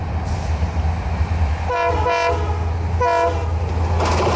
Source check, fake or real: real